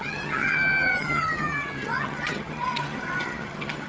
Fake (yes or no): yes